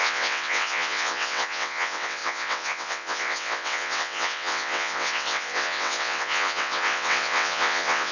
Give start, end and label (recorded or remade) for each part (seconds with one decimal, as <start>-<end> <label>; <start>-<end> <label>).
0.0-8.1 remade